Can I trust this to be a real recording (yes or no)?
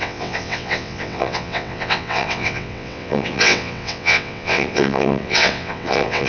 no